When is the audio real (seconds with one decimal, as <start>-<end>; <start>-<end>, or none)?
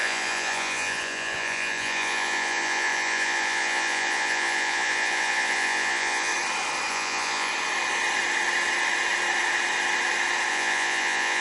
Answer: 6.3-6.9; 7.5-10.5